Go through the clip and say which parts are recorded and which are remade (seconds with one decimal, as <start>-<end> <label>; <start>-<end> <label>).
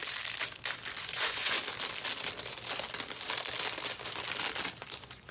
0.0-1.0 recorded; 1.0-1.6 remade; 1.6-4.8 recorded; 4.8-5.3 remade